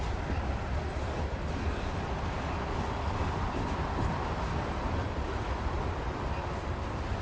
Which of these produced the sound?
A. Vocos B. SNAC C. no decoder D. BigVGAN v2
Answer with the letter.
C